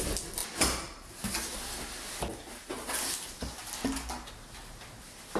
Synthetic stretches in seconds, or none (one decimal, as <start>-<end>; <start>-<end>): none